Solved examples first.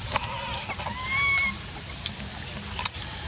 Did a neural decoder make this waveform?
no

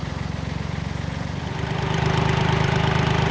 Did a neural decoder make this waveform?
yes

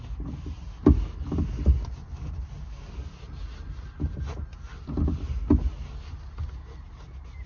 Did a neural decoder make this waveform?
no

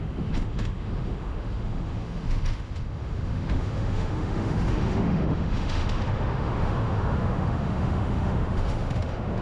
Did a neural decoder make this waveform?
yes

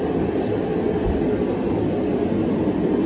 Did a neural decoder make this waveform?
no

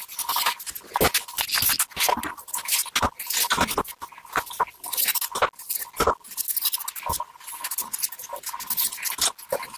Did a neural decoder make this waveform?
no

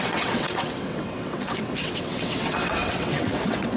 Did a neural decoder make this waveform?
yes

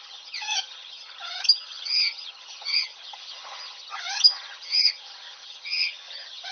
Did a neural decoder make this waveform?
yes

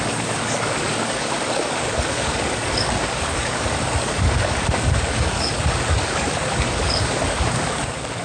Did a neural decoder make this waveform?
yes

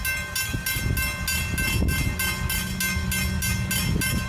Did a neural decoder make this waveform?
no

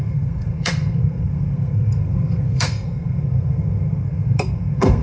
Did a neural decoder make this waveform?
yes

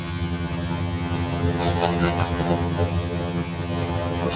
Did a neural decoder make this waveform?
yes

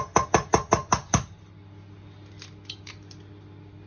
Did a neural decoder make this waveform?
no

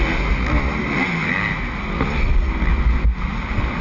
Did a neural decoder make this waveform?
no